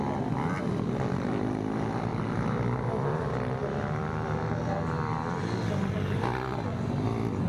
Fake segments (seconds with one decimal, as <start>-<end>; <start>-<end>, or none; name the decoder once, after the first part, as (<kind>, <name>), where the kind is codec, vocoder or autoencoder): none